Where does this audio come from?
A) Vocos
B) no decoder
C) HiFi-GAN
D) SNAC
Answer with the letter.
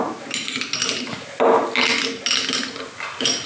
B